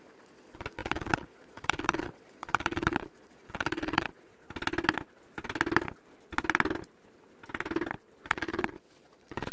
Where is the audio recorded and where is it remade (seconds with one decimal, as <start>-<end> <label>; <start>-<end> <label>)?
0.0-4.3 remade; 4.3-8.2 recorded; 8.2-9.5 remade